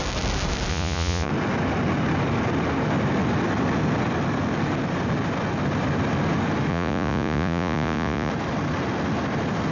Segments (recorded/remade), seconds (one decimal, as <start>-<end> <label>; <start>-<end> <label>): 0.0-0.7 recorded; 0.7-1.3 remade; 1.3-6.7 recorded; 6.7-8.3 remade; 8.3-9.7 recorded